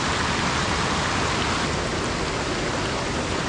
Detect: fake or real real